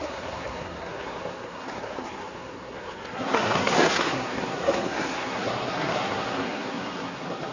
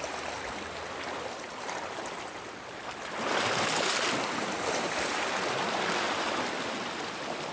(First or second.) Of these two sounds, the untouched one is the second